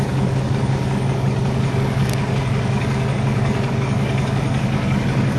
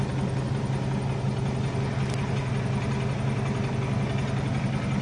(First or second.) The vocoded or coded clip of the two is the first